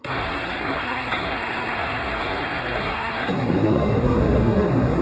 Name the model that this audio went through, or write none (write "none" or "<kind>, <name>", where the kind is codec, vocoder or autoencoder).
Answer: codec, SNAC